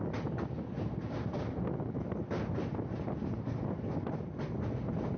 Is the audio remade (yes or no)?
no